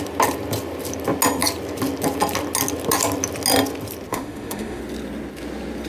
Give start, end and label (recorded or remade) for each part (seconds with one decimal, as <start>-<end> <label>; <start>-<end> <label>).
0.0-4.1 recorded; 4.1-4.8 remade; 4.8-5.9 recorded